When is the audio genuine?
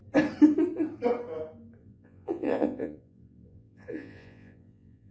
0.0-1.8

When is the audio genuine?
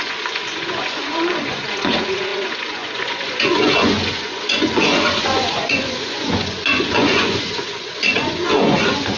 none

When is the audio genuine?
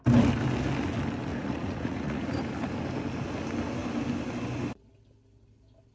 0.0-1.3; 2.3-5.9